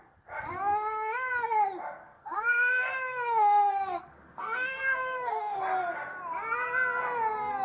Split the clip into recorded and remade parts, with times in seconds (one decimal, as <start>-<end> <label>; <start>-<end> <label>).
0.0-0.5 recorded; 0.5-1.3 remade; 1.3-2.0 recorded; 2.0-5.6 remade; 5.6-7.6 recorded